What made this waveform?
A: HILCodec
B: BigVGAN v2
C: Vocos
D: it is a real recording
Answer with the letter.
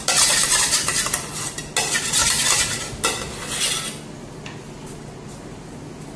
D